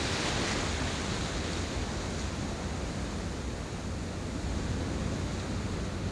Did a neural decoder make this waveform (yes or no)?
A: no